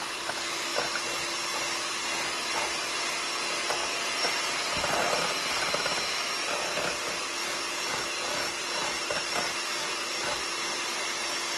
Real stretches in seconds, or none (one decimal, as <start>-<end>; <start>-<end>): 0.0-3.8; 5.4-8.8; 9.4-11.6

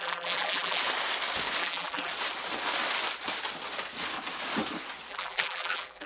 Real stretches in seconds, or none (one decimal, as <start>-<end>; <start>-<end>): 0.8-1.6; 2.1-5.1

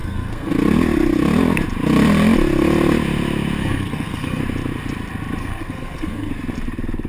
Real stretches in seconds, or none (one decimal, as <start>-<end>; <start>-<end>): 0.5-3.6; 4.4-5.4; 6.3-7.1